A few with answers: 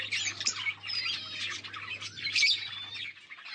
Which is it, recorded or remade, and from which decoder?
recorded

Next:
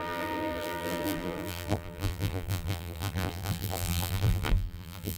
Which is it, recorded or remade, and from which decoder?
remade, vocoder, BigVGAN v2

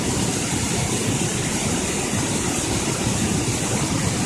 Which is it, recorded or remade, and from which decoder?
recorded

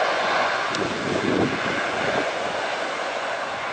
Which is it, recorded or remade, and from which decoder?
remade, vocoder, Vocos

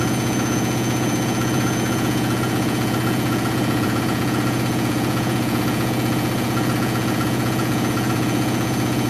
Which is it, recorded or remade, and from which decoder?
remade, vocoder, Vocos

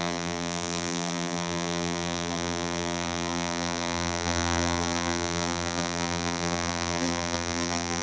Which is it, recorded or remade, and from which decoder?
remade, vocoder, BigVGAN v2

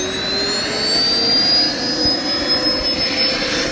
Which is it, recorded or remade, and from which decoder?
recorded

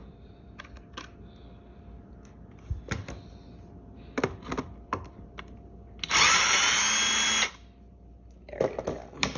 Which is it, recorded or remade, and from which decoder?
recorded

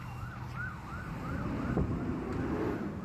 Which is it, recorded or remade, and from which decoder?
recorded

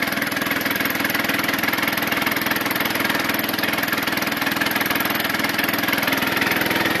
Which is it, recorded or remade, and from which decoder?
recorded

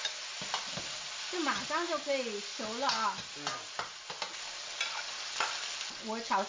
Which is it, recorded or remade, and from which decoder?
recorded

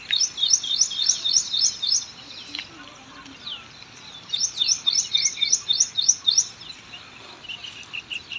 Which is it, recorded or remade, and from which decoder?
recorded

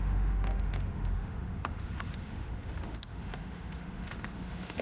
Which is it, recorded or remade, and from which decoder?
remade, autoencoder, DAC-VAE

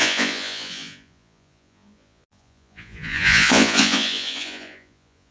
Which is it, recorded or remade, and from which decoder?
remade, vocoder, Vocos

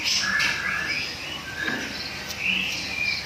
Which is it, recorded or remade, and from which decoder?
recorded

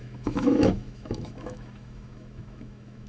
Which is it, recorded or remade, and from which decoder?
remade, autoencoder, DAC-VAE